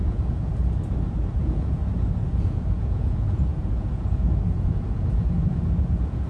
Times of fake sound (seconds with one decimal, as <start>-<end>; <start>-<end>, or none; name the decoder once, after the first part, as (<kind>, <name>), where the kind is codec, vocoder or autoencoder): 0.0-0.5 (vocoder, Vocos); 1.4-1.8; 2.3-6.3